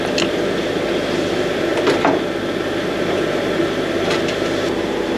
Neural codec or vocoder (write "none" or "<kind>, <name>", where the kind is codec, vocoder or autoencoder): vocoder, BigVGAN v2